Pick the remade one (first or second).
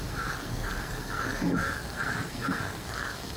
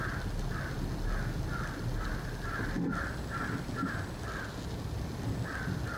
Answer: first